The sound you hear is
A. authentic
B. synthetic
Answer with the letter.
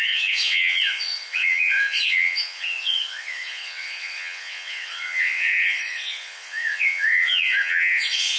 B